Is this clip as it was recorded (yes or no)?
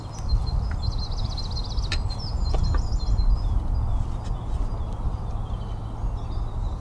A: yes